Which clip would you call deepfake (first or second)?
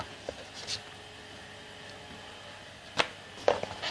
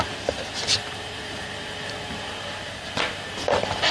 second